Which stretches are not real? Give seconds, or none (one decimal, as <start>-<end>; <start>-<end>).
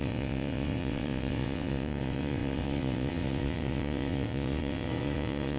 0.0-5.6